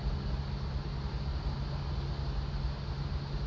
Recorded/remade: recorded